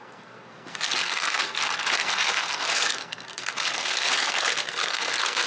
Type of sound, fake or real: fake